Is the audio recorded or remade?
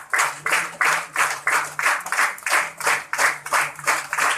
remade